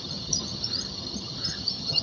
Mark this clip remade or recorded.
remade